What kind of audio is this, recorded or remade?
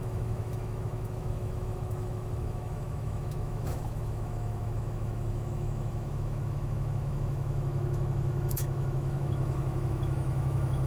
remade